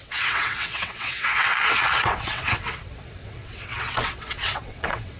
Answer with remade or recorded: remade